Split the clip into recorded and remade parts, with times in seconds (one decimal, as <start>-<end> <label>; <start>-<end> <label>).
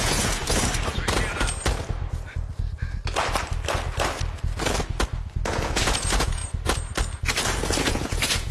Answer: 0.0-0.4 remade; 0.4-5.5 recorded; 5.5-6.4 remade; 6.4-7.8 recorded; 7.8-8.5 remade